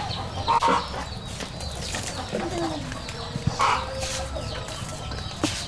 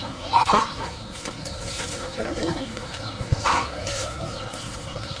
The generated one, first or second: second